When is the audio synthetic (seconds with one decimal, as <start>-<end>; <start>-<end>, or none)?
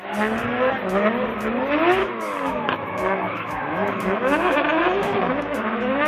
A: 2.0-6.1